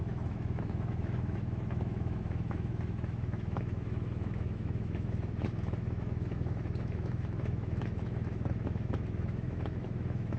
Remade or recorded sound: remade